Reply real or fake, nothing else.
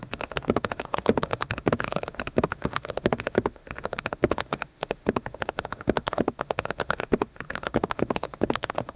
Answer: fake